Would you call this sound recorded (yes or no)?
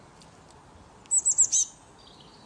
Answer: yes